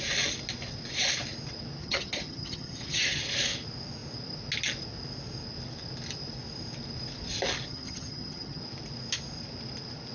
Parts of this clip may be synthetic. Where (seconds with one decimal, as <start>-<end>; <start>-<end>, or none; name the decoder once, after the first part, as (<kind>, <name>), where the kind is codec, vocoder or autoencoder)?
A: 1.8-3.2 (vocoder, HiFi-GAN); 7.7-8.6